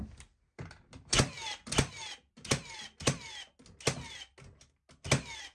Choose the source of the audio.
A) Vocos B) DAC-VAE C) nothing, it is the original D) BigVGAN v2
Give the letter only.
C